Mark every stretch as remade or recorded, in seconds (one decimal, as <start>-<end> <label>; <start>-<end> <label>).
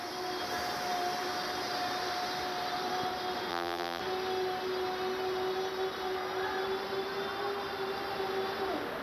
0.0-3.5 recorded; 3.5-4.0 remade; 4.0-9.0 recorded